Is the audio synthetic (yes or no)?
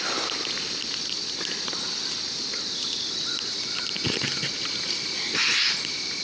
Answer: no